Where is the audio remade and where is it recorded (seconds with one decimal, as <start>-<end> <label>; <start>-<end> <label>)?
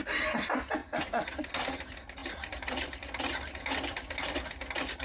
0.0-0.8 recorded; 0.8-1.8 remade; 1.8-2.2 recorded; 2.2-4.4 remade; 4.4-5.0 recorded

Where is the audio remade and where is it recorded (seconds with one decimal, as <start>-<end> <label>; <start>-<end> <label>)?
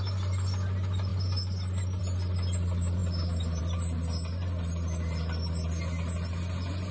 0.0-6.9 recorded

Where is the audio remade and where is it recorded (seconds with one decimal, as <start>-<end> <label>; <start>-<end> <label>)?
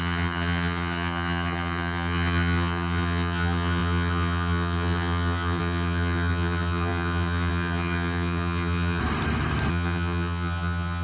0.0-9.0 remade; 9.0-9.7 recorded; 9.7-11.0 remade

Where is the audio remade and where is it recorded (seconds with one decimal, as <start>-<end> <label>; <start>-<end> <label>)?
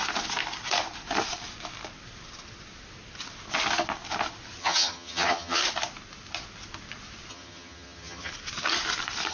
0.0-4.6 recorded; 4.6-5.6 remade; 5.6-7.3 recorded; 7.3-8.3 remade; 8.3-9.3 recorded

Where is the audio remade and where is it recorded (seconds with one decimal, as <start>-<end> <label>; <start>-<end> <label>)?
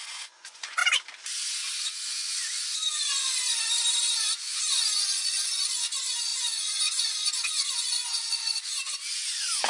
0.0-0.8 remade; 0.8-1.8 recorded; 1.8-3.4 remade; 3.4-4.0 recorded; 4.0-9.7 remade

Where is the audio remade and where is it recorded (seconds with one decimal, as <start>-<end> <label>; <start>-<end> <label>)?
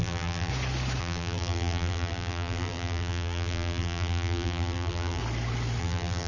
0.0-0.5 remade; 0.5-1.0 recorded; 1.0-5.2 remade; 5.2-5.8 recorded; 5.8-6.3 remade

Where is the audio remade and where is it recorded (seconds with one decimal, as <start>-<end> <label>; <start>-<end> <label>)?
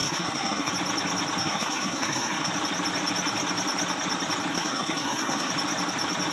0.0-0.7 remade; 0.7-1.4 recorded; 1.4-2.5 remade; 2.5-4.5 recorded; 4.5-5.5 remade; 5.5-6.3 recorded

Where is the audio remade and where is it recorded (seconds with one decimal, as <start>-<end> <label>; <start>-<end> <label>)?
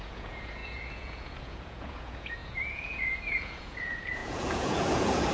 0.0-5.3 remade